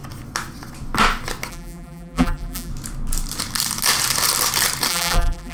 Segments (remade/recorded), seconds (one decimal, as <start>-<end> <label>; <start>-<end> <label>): 0.0-1.5 recorded; 1.5-2.7 remade; 2.7-4.9 recorded; 4.9-5.5 remade